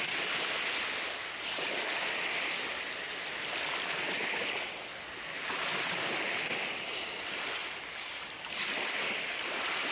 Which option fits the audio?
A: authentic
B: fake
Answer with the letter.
A